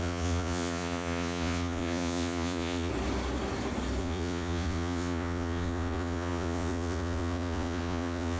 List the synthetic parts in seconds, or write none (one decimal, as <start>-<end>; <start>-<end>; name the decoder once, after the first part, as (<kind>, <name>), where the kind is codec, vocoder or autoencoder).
0.0-2.9 (vocoder, Vocos); 4.0-8.4